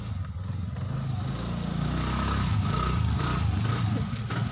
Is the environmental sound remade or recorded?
recorded